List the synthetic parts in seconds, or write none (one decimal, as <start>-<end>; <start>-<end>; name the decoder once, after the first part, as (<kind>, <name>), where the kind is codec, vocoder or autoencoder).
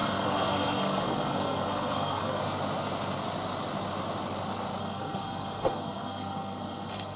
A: 0.0-2.4 (codec, SNAC); 4.8-7.2